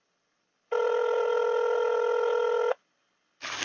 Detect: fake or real real